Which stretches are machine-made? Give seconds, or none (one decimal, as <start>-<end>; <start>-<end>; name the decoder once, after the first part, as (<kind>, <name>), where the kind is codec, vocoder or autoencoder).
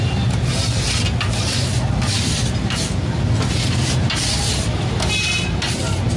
none